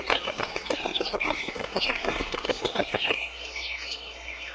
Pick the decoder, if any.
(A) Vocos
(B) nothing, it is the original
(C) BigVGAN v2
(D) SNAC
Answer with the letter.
D